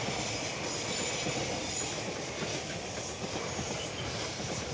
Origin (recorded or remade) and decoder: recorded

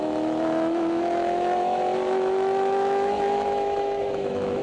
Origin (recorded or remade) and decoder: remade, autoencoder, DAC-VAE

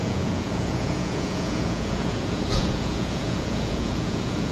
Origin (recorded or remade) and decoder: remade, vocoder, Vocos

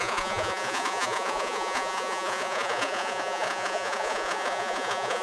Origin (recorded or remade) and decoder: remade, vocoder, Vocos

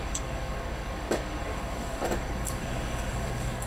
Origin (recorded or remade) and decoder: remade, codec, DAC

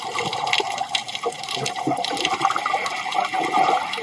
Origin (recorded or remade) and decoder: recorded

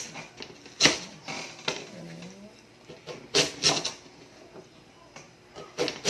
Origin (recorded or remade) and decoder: recorded